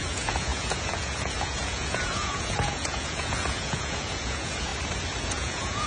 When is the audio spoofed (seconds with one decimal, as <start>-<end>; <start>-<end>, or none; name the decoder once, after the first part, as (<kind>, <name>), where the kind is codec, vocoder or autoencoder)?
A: 0.0-4.7 (vocoder, Vocos); 5.2-5.9

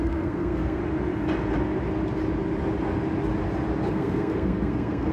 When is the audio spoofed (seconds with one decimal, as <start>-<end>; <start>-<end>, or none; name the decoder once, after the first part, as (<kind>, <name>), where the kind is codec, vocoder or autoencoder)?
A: 0.0-0.8 (codec, SNAC); 3.9-5.1

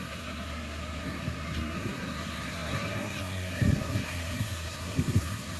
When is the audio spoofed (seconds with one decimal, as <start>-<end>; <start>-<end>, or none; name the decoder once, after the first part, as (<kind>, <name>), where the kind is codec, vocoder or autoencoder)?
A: 0.0-5.6 (codec, SNAC)

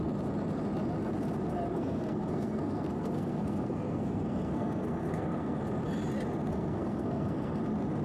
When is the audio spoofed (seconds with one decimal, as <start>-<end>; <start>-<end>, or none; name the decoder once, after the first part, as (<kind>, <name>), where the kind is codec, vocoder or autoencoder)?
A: 1.7-5.6 (codec, SNAC); 6.5-7.6

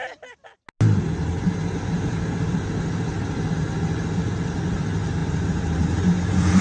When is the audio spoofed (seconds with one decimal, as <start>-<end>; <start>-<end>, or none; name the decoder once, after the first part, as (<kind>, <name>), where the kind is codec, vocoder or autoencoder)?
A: 5.2-6.6 (vocoder, BigVGAN v2)

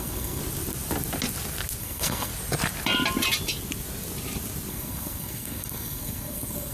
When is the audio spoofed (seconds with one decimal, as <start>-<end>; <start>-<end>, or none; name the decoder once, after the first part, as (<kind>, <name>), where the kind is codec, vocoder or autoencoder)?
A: 0.0-0.4 (codec, SNAC); 1.8-2.3; 4.7-6.7

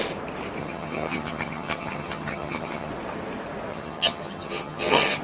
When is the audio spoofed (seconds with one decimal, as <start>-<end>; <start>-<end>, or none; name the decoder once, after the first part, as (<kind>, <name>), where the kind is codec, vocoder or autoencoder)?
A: 0.6-2.9 (vocoder, HiFi-GAN); 3.7-5.2